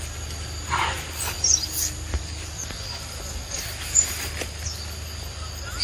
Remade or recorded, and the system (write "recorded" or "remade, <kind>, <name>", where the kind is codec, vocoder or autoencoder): recorded